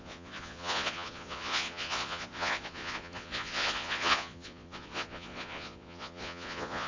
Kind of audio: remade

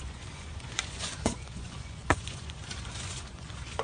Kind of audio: remade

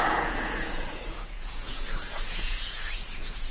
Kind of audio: remade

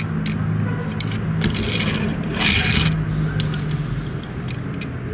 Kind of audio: recorded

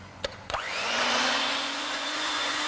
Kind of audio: remade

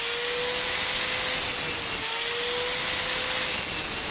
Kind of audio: recorded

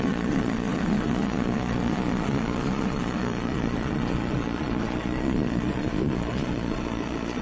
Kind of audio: remade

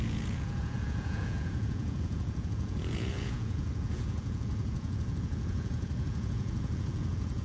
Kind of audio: remade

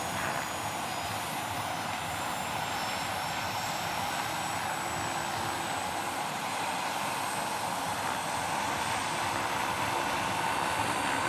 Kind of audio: recorded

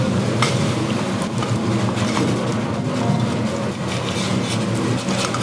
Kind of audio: recorded